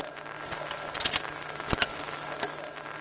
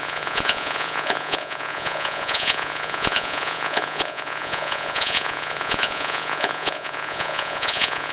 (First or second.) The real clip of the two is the first